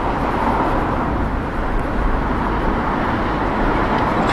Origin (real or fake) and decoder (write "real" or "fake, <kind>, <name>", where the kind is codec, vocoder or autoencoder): real